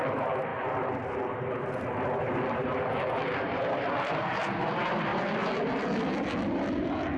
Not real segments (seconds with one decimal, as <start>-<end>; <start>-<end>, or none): none